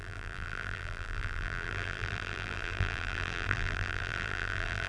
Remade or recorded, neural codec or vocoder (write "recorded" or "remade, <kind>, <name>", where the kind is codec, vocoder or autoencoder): remade, vocoder, BigVGAN v2